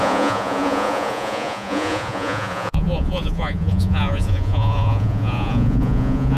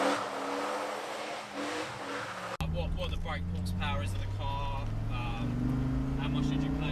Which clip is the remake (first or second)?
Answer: first